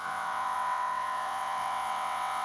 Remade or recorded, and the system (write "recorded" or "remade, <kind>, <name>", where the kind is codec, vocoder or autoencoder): remade, vocoder, WaveNeXt